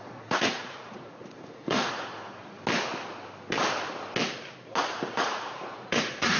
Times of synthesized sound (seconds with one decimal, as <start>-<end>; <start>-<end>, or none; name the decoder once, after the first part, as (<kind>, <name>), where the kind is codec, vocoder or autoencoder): 0.0-2.4 (vocoder, Vocos); 5.1-6.4